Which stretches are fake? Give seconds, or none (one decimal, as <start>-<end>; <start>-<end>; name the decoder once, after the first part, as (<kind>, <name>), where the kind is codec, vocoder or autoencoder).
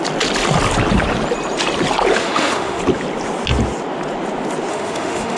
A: 2.2-2.8 (autoencoder, DAC-VAE); 4.7-5.4